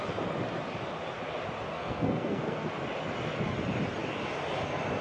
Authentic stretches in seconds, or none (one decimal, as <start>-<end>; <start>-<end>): 0.0-1.7; 2.7-5.0